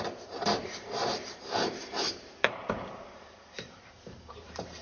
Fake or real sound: fake